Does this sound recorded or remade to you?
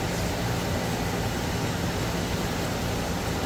recorded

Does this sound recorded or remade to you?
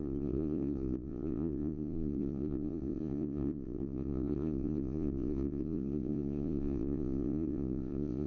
remade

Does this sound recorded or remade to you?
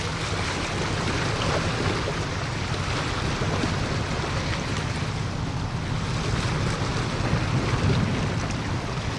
recorded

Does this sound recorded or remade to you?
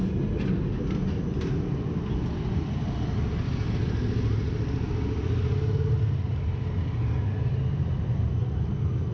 recorded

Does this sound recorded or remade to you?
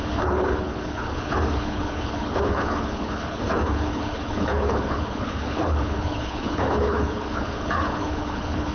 remade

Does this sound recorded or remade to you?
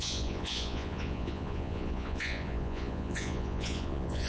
remade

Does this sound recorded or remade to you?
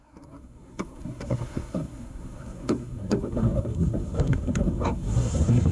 remade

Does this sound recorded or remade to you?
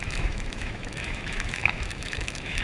remade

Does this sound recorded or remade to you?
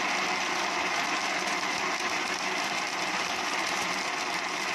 recorded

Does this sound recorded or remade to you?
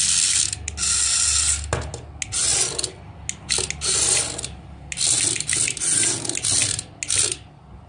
recorded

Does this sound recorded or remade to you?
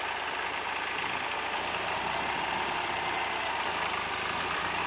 recorded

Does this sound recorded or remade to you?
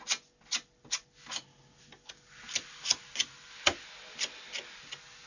recorded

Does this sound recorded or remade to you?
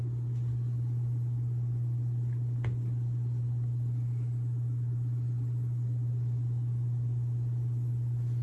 recorded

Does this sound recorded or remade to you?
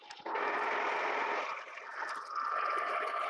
recorded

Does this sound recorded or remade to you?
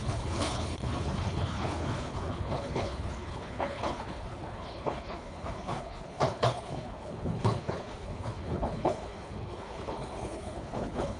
remade